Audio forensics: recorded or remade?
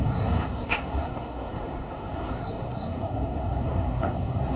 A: remade